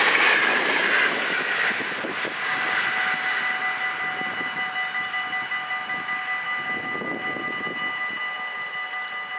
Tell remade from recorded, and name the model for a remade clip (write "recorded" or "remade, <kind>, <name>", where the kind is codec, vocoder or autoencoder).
recorded